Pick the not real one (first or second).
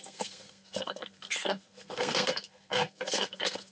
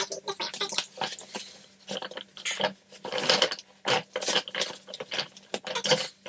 first